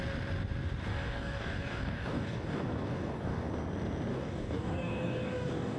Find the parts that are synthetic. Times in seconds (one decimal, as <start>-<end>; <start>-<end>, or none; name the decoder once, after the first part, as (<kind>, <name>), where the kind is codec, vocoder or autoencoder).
0.9-3.5 (codec, DAC); 4.1-5.8